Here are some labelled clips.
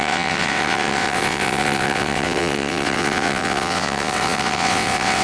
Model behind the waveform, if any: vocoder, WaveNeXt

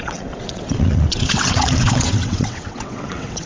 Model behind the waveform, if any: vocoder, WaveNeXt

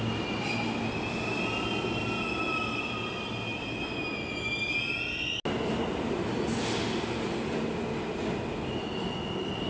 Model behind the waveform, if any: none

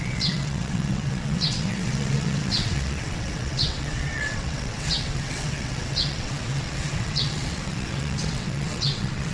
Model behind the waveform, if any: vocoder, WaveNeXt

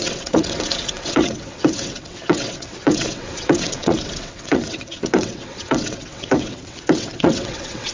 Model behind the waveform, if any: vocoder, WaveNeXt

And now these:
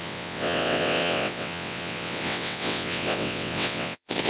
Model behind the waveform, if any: vocoder, WaveNeXt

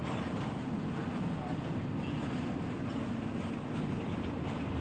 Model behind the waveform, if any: none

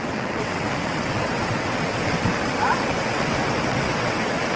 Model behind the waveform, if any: vocoder, WaveNeXt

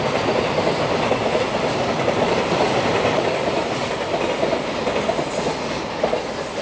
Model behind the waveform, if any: none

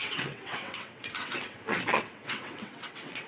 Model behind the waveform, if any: vocoder, WaveNeXt